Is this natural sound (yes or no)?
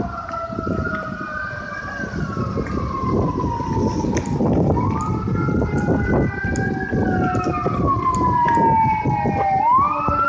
yes